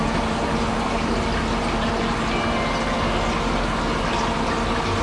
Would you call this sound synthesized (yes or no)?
no